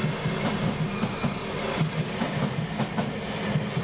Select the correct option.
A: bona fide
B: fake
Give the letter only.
A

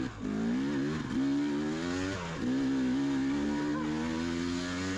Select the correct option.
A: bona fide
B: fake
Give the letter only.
A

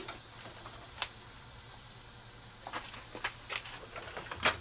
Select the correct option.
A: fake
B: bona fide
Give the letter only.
B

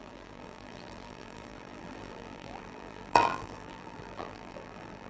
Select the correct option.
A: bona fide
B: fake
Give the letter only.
B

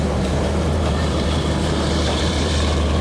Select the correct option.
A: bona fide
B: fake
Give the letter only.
B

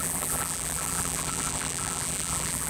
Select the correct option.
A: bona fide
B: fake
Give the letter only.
B